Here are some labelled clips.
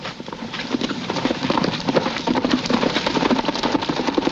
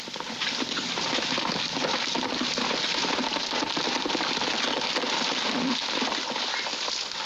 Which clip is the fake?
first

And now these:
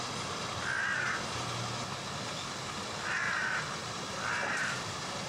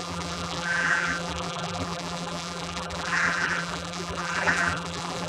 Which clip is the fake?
second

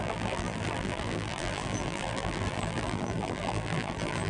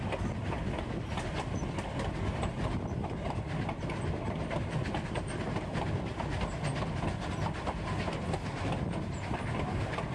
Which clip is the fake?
first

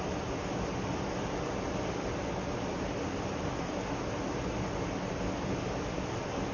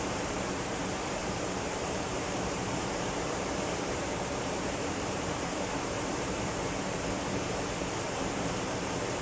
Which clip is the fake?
second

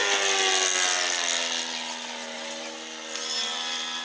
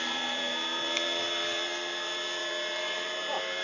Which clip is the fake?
second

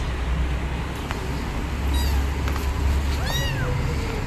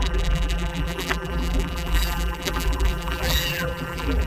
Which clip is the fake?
second